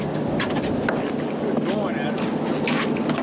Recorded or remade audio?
recorded